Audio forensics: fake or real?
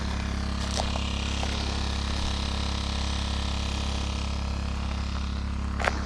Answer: real